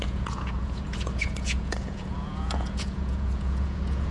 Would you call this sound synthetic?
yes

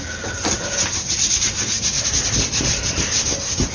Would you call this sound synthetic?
no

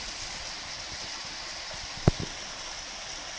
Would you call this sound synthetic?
no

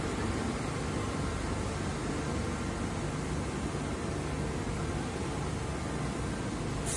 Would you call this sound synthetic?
no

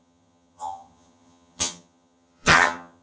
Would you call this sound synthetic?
yes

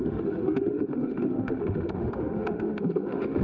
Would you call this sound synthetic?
yes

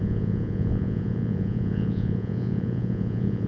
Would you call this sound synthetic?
yes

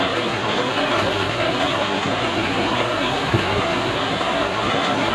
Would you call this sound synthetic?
yes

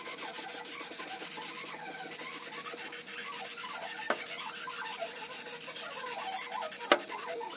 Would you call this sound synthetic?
no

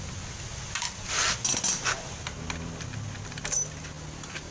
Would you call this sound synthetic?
no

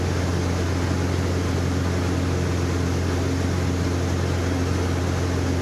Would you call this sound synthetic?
no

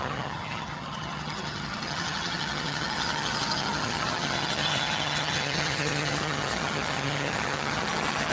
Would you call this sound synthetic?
yes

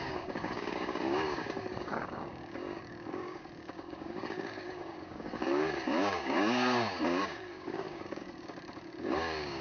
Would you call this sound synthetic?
yes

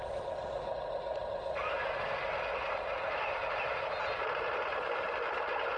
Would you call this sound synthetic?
no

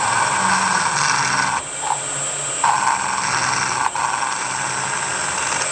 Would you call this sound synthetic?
no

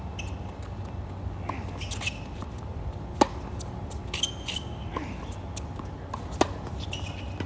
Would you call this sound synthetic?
no